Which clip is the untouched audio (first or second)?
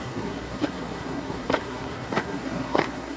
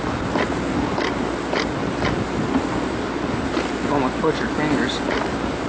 second